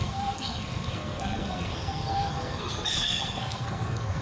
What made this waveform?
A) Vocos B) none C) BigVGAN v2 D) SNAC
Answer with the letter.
D